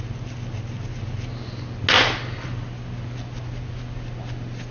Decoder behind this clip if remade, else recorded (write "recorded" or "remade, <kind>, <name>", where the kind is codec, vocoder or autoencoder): recorded